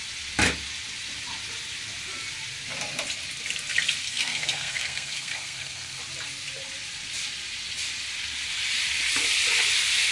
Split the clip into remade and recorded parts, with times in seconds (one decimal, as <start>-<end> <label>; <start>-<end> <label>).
0.0-4.0 recorded; 4.0-6.0 remade; 6.0-10.1 recorded